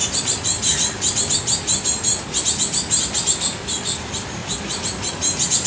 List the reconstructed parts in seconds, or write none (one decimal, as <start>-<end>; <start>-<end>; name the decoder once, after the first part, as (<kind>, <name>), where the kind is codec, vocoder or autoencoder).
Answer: 0.0-0.6 (vocoder, BigVGAN v2); 4.0-4.4; 5.1-5.7